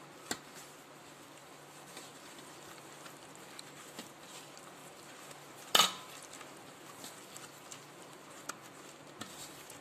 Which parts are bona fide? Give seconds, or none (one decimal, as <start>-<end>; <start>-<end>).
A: 0.0-9.8